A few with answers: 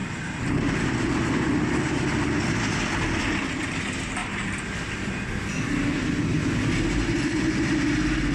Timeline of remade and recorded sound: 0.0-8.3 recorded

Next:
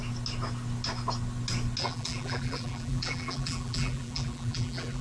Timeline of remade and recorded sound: 0.0-1.8 recorded; 1.8-5.0 remade

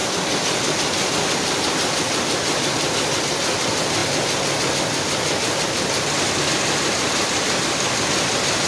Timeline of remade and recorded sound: 0.0-3.2 remade; 3.2-8.7 recorded

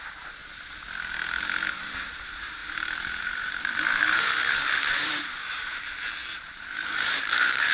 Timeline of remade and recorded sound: 0.0-0.4 remade; 0.4-1.7 recorded; 1.7-2.6 remade; 2.6-3.2 recorded; 3.2-7.7 remade

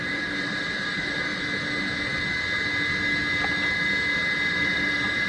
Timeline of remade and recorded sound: 0.0-1.3 remade; 1.3-4.5 recorded; 4.5-5.3 remade

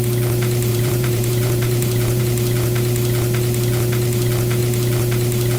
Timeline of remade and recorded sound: 0.0-0.7 recorded; 0.7-2.2 remade; 2.2-5.6 recorded

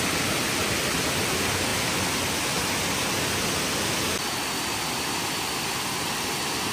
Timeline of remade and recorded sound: 0.0-6.7 recorded